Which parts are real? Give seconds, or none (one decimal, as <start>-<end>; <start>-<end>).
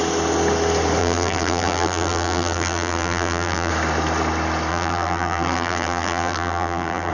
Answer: 0.0-1.0; 3.7-4.7